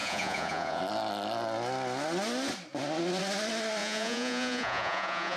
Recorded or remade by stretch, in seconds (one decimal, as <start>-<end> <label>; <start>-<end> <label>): 0.0-0.8 remade; 0.8-3.8 recorded; 3.8-5.4 remade